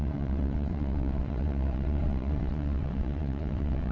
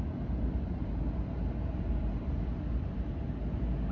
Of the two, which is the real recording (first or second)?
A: second